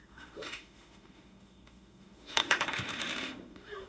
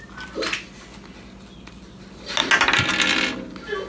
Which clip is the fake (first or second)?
first